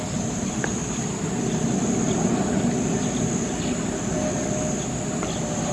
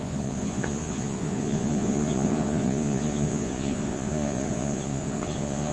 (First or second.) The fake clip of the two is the second